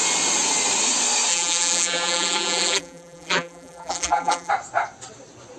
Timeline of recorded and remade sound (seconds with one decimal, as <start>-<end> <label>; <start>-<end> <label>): 0.0-1.3 recorded; 1.3-4.5 remade; 4.5-5.6 recorded